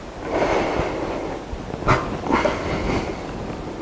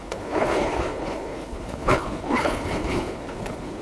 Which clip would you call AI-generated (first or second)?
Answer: second